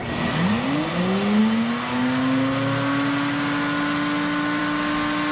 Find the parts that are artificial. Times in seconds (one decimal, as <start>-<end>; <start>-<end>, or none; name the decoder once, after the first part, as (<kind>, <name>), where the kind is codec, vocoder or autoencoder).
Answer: none